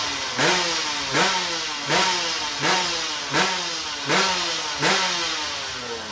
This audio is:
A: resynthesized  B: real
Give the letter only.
B